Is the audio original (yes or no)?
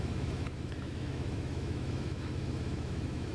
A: no